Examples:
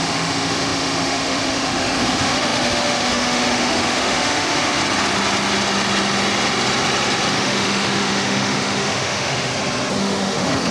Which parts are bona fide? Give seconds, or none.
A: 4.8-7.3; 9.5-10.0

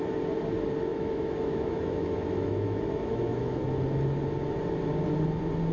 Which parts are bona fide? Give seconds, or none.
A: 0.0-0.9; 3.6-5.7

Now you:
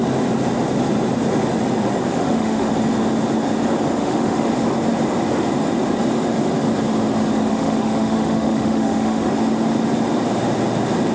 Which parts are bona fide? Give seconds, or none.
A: 0.0-2.1; 2.7-4.0; 4.5-7.5; 9.3-11.1

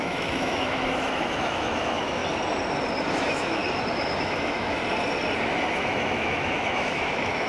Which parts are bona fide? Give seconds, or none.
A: 2.2-3.1; 3.6-4.2; 4.8-5.7

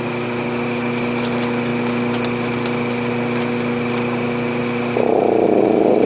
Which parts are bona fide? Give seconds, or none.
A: 0.0-6.1